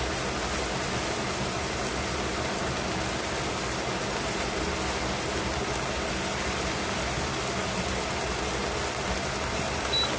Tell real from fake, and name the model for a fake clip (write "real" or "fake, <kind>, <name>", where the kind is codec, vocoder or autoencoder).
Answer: real